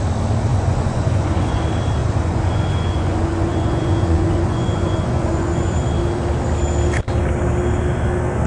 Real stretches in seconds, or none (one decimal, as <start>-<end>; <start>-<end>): 0.0-0.5; 1.6-2.0; 5.7-8.5